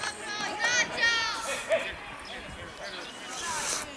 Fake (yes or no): no